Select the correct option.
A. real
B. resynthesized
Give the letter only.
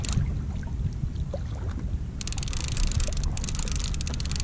A